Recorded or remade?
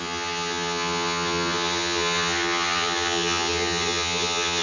remade